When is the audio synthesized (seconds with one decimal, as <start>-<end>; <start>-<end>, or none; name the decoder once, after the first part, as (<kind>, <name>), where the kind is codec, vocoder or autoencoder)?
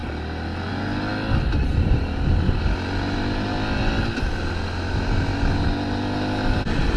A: none